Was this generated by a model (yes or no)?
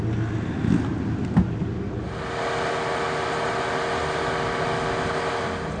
no